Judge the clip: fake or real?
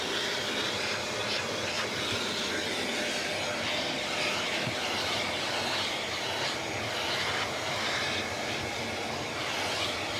real